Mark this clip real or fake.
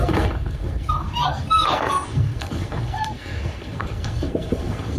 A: fake